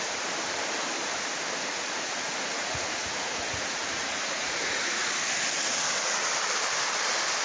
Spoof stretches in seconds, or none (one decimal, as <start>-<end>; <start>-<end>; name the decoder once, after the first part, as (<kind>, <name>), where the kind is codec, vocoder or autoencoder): 1.7-5.1 (vocoder, Vocos)